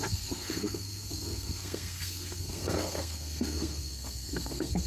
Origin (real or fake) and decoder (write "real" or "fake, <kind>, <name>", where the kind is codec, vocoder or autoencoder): fake, codec, SNAC